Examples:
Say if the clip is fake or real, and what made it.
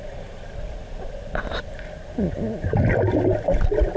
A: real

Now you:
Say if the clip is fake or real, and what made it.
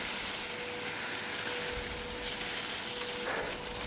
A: real